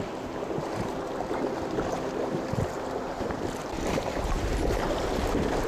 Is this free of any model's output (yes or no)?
yes